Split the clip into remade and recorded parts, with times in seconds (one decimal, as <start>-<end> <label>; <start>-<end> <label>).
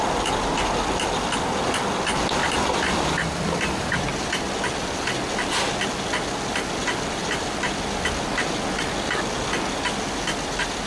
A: 0.0-2.4 recorded; 2.4-4.1 remade; 4.1-10.9 recorded